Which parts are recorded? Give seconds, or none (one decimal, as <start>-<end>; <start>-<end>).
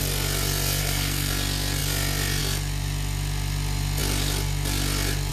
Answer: 0.0-0.8; 1.3-5.3